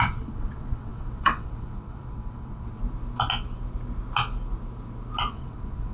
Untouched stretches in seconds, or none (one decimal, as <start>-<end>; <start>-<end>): 2.8-5.3